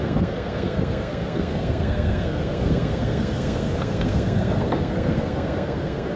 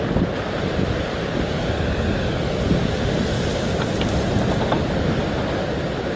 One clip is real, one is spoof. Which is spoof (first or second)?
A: first